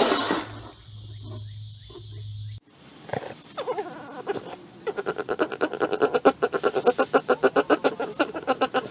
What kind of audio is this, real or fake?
real